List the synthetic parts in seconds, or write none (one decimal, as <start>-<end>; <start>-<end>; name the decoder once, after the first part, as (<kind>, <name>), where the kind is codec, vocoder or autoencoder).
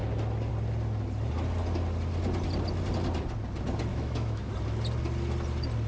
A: 3.9-4.5 (autoencoder, DAC-VAE)